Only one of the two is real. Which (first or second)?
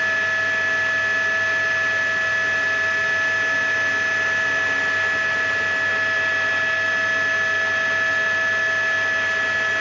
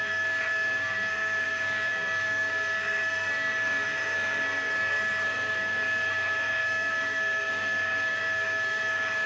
first